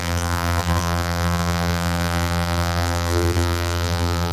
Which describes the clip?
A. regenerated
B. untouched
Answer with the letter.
A